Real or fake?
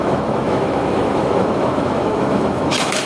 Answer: fake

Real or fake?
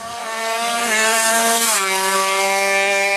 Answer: fake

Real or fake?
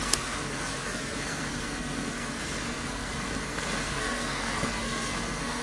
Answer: fake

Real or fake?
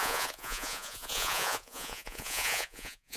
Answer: fake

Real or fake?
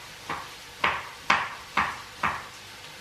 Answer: real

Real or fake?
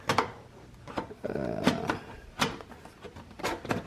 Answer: real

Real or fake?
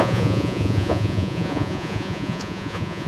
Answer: fake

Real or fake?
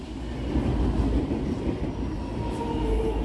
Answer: real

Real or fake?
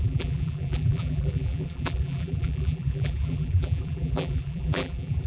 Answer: fake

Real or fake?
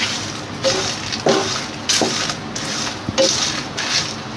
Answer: real